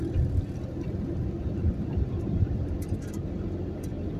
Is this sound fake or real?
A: fake